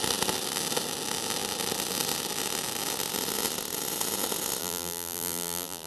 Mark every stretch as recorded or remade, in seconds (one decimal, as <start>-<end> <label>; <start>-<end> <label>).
0.0-4.6 recorded; 4.6-5.9 remade